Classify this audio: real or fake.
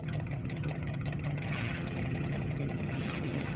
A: fake